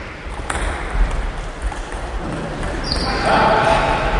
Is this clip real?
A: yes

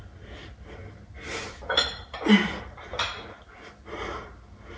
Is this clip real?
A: yes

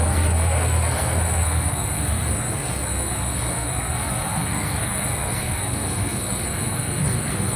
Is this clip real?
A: no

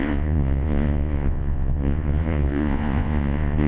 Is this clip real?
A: no